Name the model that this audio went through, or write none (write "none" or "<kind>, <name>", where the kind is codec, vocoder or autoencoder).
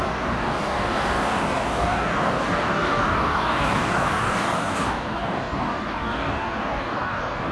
codec, DAC